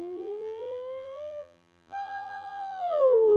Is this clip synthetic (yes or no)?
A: yes